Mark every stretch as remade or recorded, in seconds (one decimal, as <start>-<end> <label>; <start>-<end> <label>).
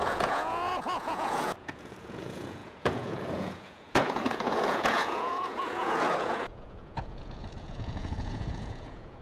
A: 0.0-9.2 remade